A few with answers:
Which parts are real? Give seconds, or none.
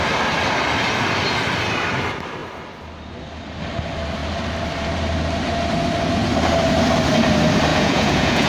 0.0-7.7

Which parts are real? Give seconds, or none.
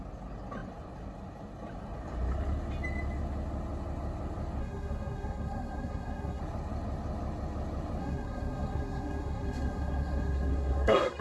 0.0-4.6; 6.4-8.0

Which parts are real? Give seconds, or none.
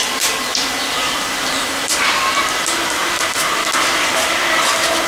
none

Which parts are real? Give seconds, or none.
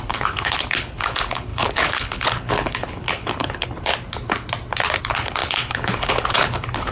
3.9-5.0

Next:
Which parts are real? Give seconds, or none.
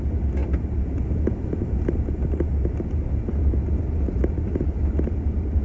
0.0-5.6